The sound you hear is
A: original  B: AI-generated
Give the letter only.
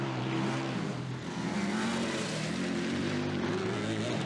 A